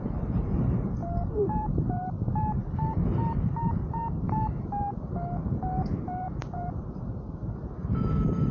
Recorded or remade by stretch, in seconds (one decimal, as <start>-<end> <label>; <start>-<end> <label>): 0.0-8.5 remade